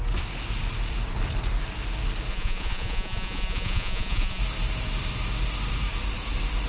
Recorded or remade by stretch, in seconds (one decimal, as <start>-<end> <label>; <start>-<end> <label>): 0.0-2.3 recorded; 2.3-4.4 remade; 4.4-6.7 recorded